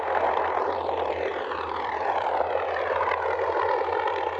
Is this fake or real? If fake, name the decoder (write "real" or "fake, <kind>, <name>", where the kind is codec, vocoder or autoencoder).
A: fake, vocoder, BigVGAN v2